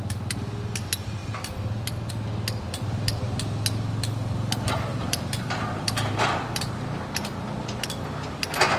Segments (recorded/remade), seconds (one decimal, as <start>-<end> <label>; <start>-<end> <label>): 0.0-4.9 recorded; 4.9-6.7 remade; 6.7-8.8 recorded